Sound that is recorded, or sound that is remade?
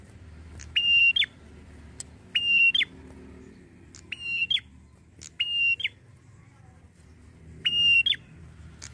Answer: recorded